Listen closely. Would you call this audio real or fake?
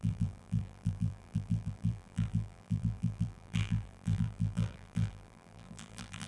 fake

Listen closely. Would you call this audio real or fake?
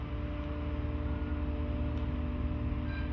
real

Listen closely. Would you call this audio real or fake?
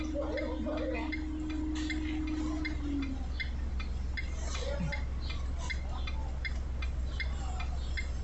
real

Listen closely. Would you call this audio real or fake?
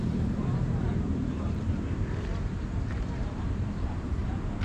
fake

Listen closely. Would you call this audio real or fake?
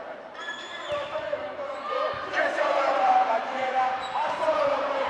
fake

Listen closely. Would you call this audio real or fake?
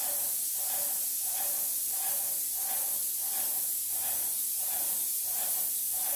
real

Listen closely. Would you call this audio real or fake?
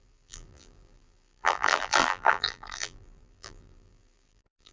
fake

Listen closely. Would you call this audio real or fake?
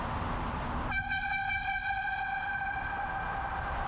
fake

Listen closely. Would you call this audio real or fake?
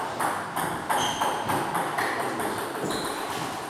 real